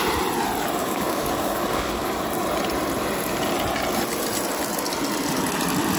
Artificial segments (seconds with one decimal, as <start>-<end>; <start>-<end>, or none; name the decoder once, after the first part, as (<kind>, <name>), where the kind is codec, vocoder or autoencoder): 0.8-2.2 (codec, DAC)

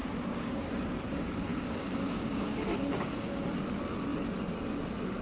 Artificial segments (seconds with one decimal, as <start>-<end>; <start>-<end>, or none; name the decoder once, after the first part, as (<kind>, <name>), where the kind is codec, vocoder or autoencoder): 0.0-0.7 (codec, DAC); 1.5-3.4